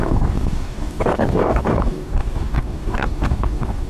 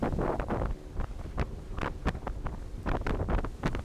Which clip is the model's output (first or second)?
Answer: first